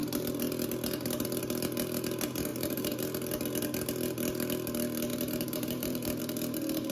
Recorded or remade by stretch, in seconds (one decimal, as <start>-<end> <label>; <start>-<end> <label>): 0.0-2.5 recorded; 2.5-3.0 remade; 3.0-5.1 recorded; 5.1-6.2 remade; 6.2-6.9 recorded